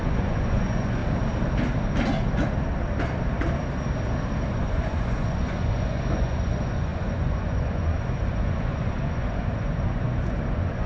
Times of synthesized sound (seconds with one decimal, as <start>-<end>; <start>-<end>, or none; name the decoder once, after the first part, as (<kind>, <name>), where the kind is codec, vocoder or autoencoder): 0.0-1.0 (vocoder, Vocos); 4.5-10.9